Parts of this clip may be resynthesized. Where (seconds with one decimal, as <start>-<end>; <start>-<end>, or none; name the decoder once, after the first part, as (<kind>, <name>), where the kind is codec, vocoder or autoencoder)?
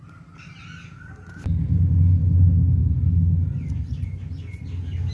none